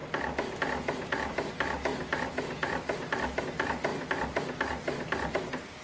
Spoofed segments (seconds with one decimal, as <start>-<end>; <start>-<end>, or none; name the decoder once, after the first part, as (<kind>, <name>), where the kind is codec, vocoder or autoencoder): none